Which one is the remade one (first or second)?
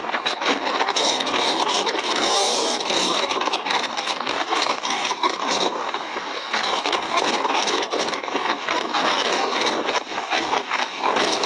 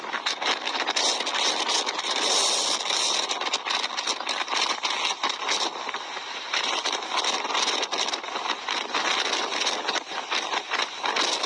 first